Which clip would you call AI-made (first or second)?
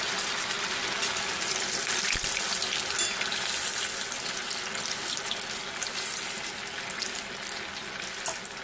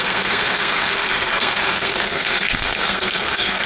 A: second